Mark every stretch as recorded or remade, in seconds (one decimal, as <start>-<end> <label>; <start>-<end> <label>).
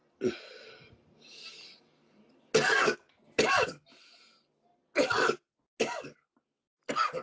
0.0-7.2 recorded